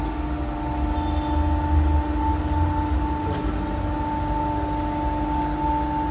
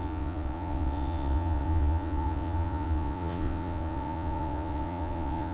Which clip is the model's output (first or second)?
second